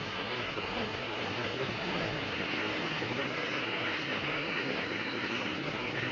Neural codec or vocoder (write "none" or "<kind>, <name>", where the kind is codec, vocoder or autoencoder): codec, SNAC